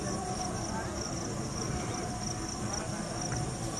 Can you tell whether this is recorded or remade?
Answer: recorded